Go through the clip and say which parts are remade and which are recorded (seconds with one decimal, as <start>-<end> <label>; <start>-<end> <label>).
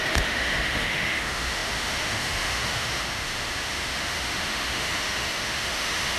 0.0-6.2 remade